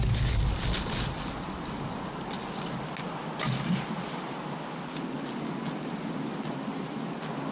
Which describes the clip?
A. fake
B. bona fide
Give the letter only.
B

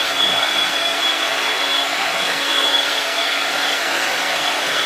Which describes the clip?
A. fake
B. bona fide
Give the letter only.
A